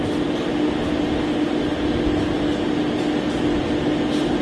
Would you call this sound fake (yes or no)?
no